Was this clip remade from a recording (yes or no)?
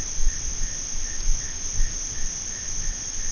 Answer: no